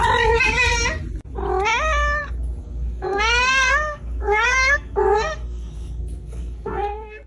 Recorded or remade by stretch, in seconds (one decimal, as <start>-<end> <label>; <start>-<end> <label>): 0.0-2.6 recorded; 2.6-7.3 remade

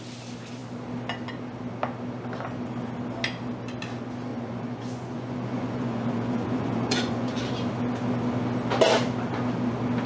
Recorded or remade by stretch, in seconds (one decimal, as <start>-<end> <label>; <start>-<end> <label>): 0.0-4.3 recorded; 4.3-7.4 remade; 7.4-10.1 recorded

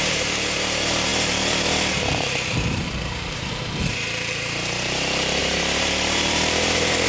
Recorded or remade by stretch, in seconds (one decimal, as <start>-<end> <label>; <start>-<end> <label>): 0.0-7.1 remade

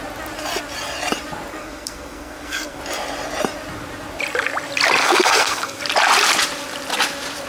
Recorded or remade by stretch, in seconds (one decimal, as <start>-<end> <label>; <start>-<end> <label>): 0.0-1.5 recorded; 1.5-2.8 remade; 2.8-5.0 recorded; 5.0-5.8 remade; 5.8-7.5 recorded